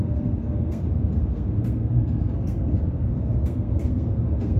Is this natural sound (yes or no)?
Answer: no